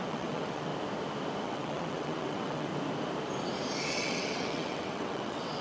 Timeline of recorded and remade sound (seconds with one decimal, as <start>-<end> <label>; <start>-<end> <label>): 0.0-0.7 remade; 0.7-1.4 recorded; 1.4-2.7 remade; 2.7-3.9 recorded; 3.9-5.6 remade